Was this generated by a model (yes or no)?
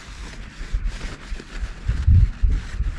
no